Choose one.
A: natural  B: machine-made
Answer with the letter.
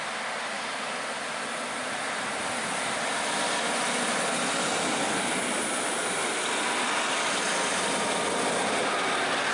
A